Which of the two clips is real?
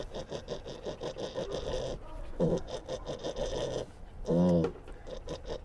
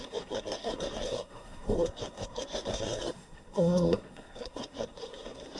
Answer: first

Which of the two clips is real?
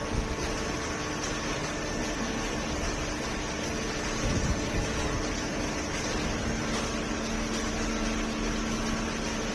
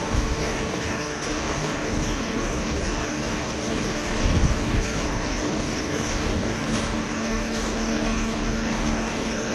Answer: first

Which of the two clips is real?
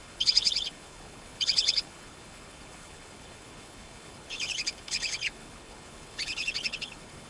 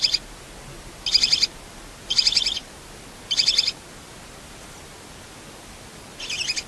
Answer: second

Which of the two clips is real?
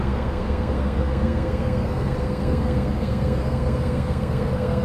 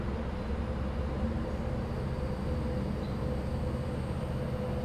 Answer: second